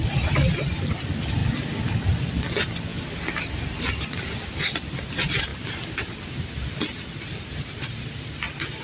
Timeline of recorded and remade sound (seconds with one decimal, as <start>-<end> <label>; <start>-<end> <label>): 0.0-8.8 recorded

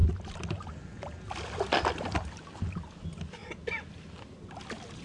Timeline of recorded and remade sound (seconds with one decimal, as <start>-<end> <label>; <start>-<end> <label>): 0.0-5.0 recorded

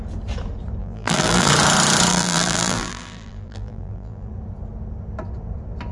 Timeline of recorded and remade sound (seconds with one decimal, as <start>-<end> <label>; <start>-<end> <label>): 0.0-0.8 recorded; 0.8-1.5 remade; 1.5-2.1 recorded; 2.1-4.3 remade; 4.3-5.9 recorded

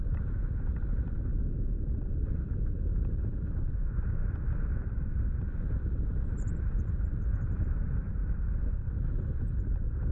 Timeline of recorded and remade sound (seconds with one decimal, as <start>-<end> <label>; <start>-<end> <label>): 0.0-1.3 remade; 1.3-1.9 recorded; 1.9-4.2 remade; 4.2-5.4 recorded; 5.4-8.2 remade; 8.2-9.4 recorded; 9.4-10.1 remade

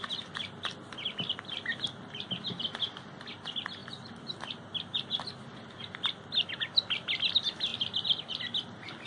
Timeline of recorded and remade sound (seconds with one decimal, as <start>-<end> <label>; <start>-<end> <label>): 0.0-3.8 recorded; 3.8-6.2 remade; 6.2-7.7 recorded; 7.7-8.4 remade; 8.4-9.1 recorded

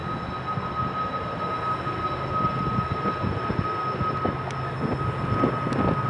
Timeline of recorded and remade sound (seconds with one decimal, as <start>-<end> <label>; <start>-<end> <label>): 0.0-6.1 recorded

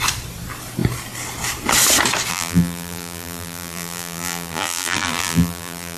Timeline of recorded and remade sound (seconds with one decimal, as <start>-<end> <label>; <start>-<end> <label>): 0.0-2.3 recorded; 2.3-6.0 remade